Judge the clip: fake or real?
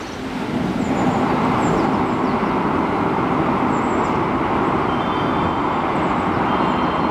real